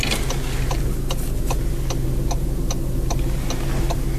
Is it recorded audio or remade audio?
recorded